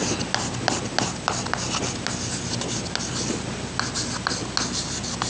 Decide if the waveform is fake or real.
real